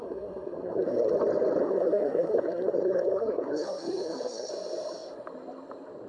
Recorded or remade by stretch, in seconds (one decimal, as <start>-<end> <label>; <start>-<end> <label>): 0.0-1.1 remade; 1.1-1.6 recorded; 1.6-4.5 remade; 4.5-6.1 recorded